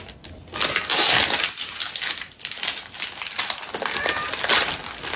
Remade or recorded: recorded